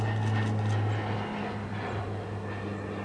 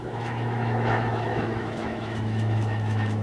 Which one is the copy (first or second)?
second